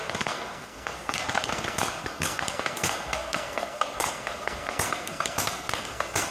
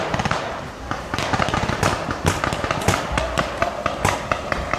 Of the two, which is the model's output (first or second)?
first